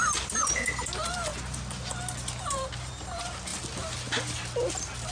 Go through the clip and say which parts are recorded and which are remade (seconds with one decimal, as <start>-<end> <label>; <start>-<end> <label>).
0.0-5.1 recorded